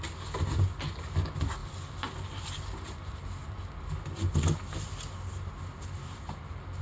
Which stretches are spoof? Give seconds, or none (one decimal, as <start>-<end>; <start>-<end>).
none